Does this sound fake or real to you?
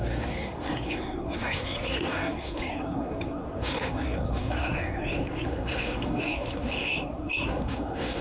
fake